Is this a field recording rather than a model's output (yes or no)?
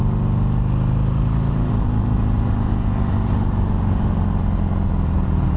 yes